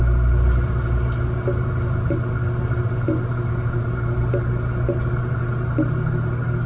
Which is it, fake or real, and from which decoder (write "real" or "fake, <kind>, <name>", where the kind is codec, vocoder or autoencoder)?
real